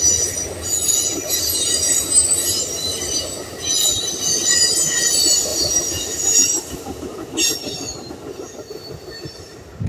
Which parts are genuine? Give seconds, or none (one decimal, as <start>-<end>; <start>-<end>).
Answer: 0.0-1.1; 3.1-5.5; 8.1-9.9